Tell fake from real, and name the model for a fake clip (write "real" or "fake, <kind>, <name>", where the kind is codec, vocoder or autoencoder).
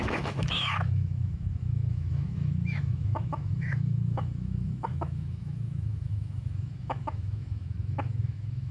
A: fake, autoencoder, DAC-VAE